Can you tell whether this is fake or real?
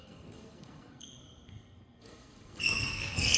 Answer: fake